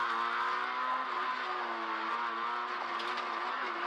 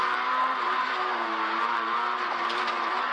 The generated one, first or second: second